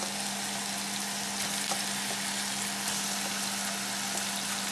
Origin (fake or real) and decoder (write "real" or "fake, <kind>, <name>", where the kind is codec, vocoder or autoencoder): real